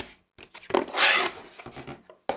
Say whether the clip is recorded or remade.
recorded